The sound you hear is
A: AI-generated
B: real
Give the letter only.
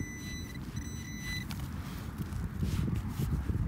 B